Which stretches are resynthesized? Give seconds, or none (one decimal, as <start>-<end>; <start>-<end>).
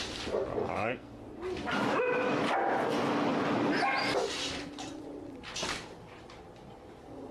0.6-1.2